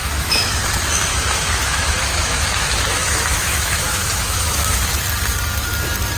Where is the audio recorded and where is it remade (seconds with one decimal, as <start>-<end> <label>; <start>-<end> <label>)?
0.0-0.6 remade; 0.6-1.1 recorded; 1.1-4.8 remade; 4.8-6.2 recorded

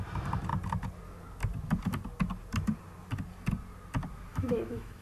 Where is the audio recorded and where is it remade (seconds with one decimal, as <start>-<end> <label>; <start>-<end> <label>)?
0.0-4.3 recorded; 4.3-5.0 remade

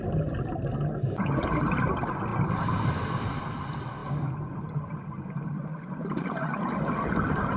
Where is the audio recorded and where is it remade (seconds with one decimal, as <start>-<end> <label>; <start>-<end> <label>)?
0.0-7.6 recorded

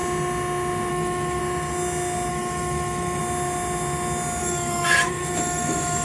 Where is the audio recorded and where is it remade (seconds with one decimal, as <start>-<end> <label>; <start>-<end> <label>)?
0.0-0.9 recorded; 0.9-1.4 remade; 1.4-2.3 recorded; 2.3-3.2 remade; 3.2-4.4 recorded; 4.4-6.0 remade